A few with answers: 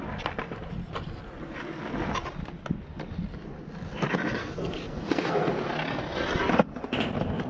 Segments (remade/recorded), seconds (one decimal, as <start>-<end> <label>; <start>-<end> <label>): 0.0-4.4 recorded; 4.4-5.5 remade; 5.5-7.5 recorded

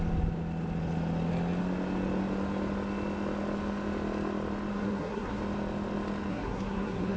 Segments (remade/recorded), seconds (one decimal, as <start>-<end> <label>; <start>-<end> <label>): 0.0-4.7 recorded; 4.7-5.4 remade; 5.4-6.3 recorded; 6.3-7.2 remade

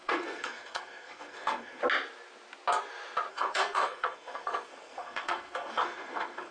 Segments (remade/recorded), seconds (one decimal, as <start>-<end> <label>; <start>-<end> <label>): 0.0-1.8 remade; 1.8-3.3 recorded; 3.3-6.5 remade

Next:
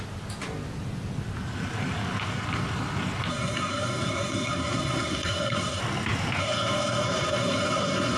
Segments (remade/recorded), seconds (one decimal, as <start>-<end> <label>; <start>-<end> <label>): 0.0-3.3 recorded; 3.3-5.8 remade; 5.8-6.4 recorded; 6.4-8.2 remade

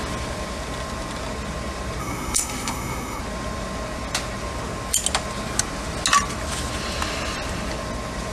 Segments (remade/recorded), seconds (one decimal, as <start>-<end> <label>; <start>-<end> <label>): 0.0-2.0 recorded; 2.0-3.2 remade; 3.2-8.3 recorded

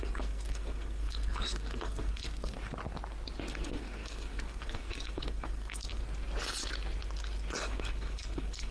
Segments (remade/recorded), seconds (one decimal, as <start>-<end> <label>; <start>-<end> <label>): 0.0-2.6 remade; 2.6-3.5 recorded; 3.5-6.0 remade; 6.0-7.6 recorded; 7.6-8.7 remade